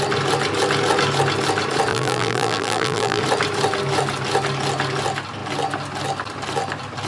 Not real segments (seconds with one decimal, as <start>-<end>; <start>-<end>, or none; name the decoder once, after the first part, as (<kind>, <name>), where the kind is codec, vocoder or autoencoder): 1.9-3.2 (vocoder, BigVGAN v2)